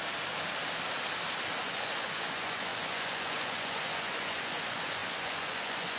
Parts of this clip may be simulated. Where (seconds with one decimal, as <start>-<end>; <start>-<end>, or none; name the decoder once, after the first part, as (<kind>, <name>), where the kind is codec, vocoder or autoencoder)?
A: 1.6-6.0 (vocoder, Vocos)